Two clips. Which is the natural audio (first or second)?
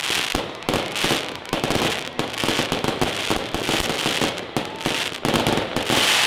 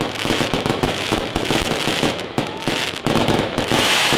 first